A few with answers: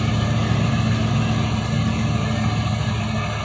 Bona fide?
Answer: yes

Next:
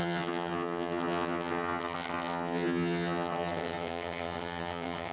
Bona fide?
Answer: no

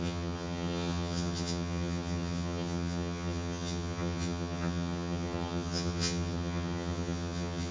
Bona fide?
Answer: no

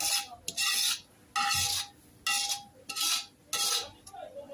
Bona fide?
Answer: yes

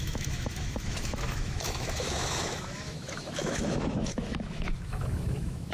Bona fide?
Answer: no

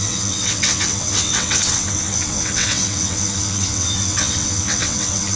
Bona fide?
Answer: no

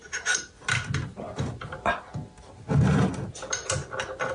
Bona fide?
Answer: yes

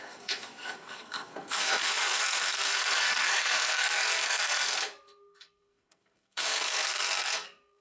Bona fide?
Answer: no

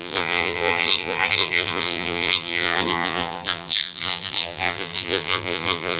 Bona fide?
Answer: no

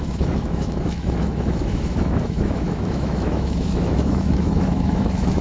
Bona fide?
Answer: no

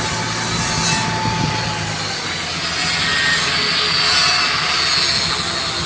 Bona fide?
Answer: yes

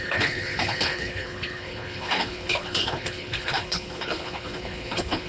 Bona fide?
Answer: no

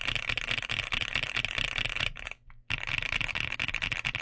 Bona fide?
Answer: yes